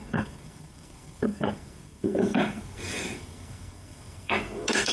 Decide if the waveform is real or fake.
fake